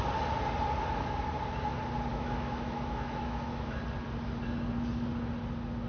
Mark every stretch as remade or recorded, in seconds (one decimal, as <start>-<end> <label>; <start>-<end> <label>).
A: 0.0-2.1 recorded; 2.1-3.8 remade; 3.8-5.9 recorded